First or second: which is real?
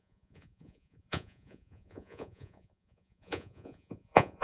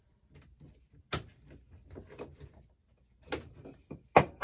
second